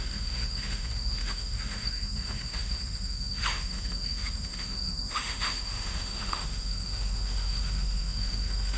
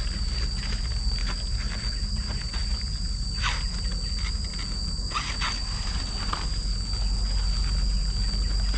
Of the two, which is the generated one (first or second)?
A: first